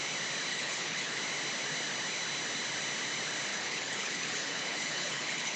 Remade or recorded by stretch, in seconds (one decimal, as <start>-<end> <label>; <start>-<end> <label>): 0.0-0.5 recorded; 0.5-1.2 remade; 1.2-3.5 recorded; 3.5-5.6 remade